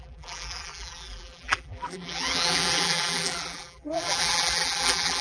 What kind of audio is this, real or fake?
fake